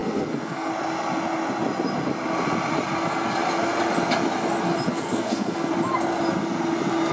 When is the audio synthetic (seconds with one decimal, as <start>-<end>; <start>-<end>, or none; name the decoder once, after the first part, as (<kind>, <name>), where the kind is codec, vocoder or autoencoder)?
0.0-0.7 (codec, SNAC); 4.9-5.7